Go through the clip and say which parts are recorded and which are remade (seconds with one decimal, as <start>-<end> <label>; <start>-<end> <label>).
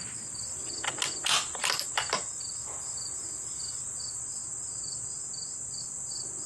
0.0-4.4 remade; 4.4-5.8 recorded; 5.8-6.5 remade